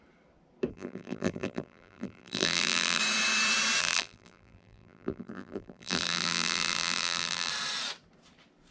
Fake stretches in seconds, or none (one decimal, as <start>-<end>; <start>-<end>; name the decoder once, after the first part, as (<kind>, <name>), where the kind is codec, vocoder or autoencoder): 0.7-3.0 (vocoder, BigVGAN v2); 3.8-7.5